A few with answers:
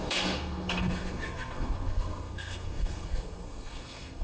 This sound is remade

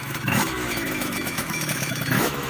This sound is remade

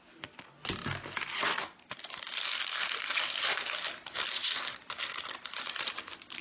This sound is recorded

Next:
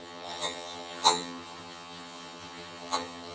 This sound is remade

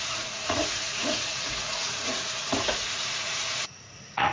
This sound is remade